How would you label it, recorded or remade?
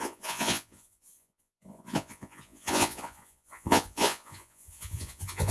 remade